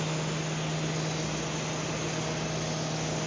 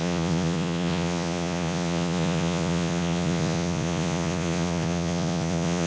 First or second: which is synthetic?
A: second